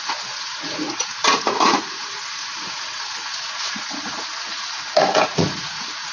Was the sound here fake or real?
fake